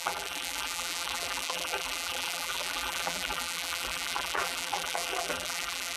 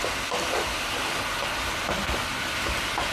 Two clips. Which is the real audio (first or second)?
second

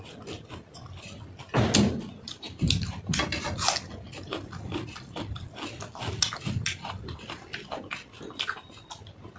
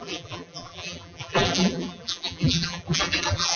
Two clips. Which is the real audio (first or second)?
first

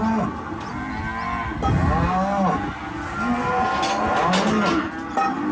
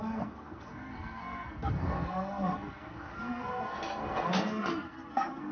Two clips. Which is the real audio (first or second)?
first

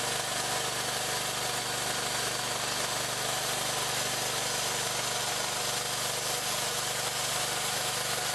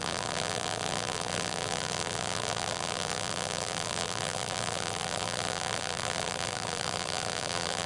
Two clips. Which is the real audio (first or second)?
first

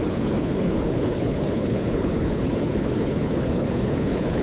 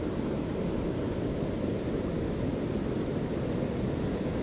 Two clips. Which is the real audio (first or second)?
second